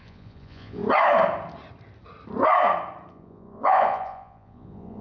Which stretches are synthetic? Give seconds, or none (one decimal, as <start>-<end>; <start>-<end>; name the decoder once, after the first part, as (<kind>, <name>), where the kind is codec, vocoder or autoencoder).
0.0-0.8 (vocoder, Vocos); 3.1-5.0